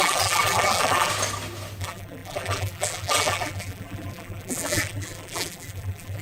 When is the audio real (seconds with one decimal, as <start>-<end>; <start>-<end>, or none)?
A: 1.1-1.8